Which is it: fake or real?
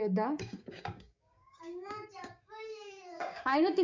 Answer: fake